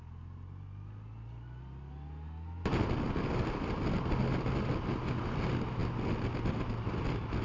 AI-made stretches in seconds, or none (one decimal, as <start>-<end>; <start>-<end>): none